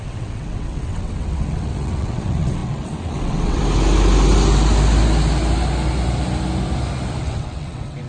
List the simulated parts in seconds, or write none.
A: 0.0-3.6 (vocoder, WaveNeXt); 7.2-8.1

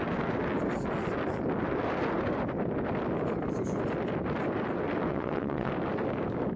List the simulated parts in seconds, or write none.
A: 5.1-5.7 (vocoder, WaveNeXt)

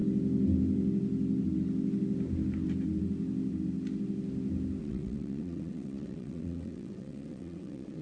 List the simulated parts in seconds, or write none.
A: 4.8-8.0 (vocoder, WaveNeXt)

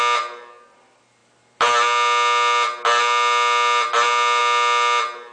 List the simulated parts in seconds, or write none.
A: none

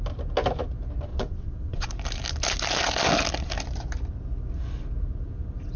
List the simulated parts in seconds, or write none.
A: 1.1-1.9 (vocoder, WaveNeXt)

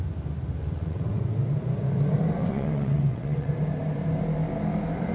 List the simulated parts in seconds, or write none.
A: 0.6-1.2 (vocoder, WaveNeXt); 2.4-3.5

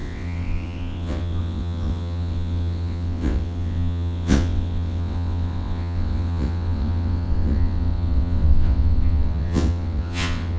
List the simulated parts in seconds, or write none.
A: 0.0-10.6 (vocoder, WaveNeXt)